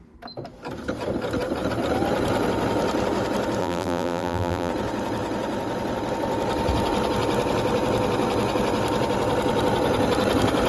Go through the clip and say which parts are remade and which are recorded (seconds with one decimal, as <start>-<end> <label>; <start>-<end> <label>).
0.0-3.6 recorded; 3.6-4.7 remade; 4.7-10.7 recorded